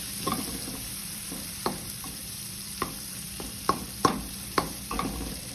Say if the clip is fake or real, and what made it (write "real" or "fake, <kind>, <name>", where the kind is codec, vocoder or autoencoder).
fake, vocoder, BigVGAN v2